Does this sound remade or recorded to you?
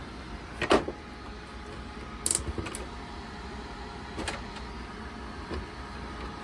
recorded